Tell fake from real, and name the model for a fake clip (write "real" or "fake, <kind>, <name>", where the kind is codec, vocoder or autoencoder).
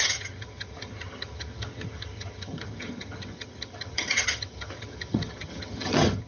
fake, vocoder, HiFi-GAN